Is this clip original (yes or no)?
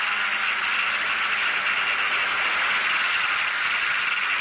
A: yes